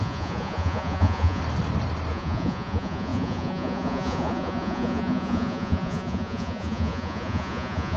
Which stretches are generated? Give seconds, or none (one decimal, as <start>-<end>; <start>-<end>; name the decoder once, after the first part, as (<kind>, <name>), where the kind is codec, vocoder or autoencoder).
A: 0.0-1.4 (vocoder, Vocos); 2.1-8.0